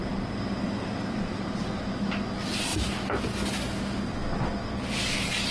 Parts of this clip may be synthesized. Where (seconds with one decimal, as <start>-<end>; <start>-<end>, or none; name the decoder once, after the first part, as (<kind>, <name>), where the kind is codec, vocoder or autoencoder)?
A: 0.0-1.4 (vocoder, BigVGAN v2)